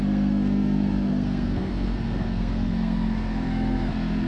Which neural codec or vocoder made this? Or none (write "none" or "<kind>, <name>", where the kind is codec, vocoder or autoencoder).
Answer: codec, SNAC